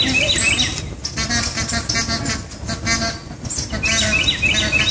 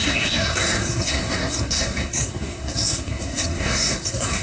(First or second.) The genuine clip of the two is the first